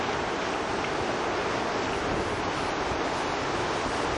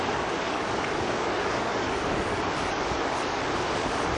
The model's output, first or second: second